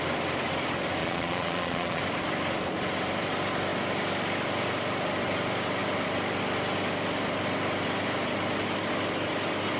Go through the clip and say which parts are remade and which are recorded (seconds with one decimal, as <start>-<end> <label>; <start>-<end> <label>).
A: 0.0-1.0 recorded; 1.0-2.0 remade; 2.0-9.8 recorded